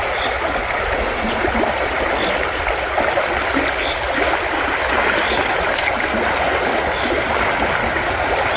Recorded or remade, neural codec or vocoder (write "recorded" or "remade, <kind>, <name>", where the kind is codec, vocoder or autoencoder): recorded